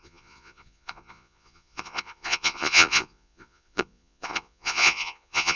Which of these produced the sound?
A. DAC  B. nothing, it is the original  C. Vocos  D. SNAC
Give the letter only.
C